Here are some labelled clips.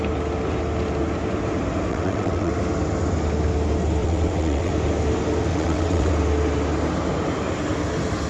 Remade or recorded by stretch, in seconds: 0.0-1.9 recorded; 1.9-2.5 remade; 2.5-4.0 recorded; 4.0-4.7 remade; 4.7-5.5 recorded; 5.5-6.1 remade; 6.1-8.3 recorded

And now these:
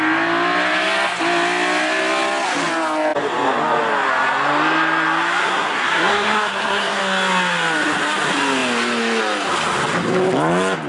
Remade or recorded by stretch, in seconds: 0.0-5.4 recorded; 5.4-7.0 remade; 7.0-10.9 recorded